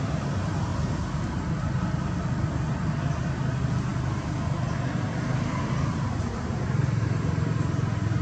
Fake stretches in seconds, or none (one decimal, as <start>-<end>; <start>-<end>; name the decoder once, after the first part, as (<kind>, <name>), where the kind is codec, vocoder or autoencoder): none